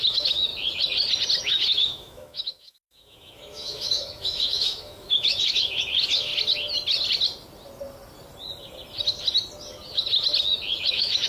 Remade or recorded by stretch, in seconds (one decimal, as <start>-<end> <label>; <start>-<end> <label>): 0.0-0.5 remade; 0.5-1.4 recorded; 1.4-6.3 remade; 6.3-10.9 recorded; 10.9-11.3 remade